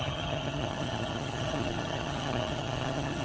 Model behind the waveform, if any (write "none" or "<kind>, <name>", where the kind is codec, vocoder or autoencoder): vocoder, HiFi-GAN